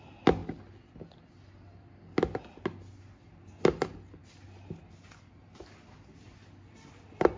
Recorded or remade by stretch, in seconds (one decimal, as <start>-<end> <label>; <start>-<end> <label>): 0.0-7.4 recorded